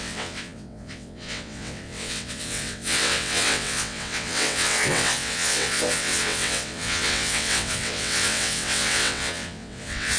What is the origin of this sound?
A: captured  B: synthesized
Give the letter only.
B